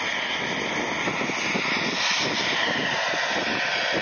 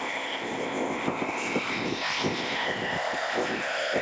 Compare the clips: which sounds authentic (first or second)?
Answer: first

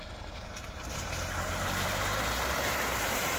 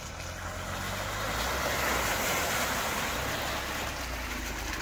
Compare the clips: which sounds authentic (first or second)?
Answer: second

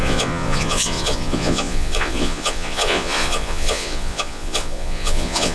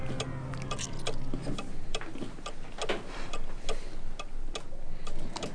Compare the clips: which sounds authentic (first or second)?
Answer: second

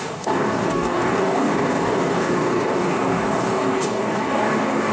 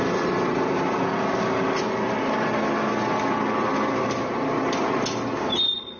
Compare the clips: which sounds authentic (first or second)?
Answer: second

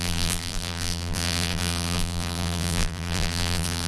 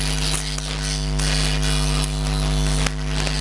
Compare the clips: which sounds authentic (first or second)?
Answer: second